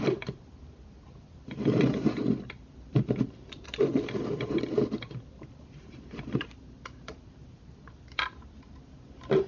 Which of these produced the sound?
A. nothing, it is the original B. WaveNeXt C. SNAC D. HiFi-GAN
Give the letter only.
A